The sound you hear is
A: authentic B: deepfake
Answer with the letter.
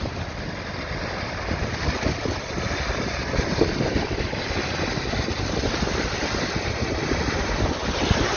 A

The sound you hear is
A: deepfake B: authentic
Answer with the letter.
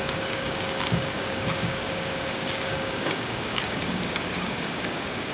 A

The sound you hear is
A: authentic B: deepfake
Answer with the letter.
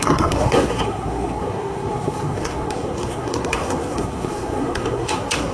B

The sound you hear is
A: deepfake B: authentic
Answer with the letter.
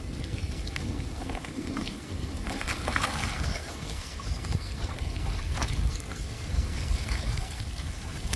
A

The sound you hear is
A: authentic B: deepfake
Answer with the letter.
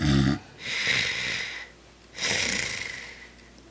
A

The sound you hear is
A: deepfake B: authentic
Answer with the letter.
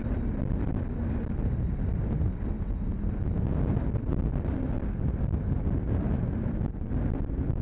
B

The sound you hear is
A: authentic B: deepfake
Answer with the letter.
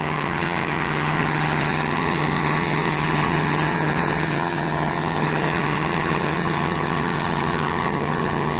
B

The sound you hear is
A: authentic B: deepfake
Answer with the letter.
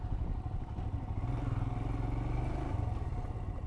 A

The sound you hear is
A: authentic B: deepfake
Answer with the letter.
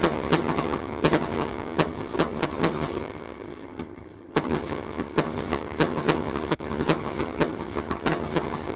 B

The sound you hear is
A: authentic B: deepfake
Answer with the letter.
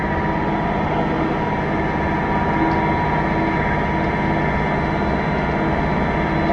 A